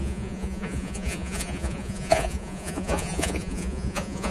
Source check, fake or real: fake